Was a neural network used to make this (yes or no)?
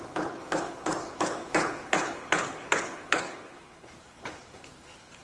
yes